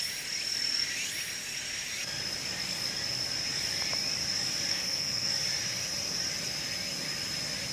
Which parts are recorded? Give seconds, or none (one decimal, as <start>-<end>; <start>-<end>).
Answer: 0.0-4.7; 5.3-7.7